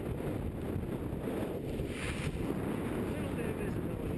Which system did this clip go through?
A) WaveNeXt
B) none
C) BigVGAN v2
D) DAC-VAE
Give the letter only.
B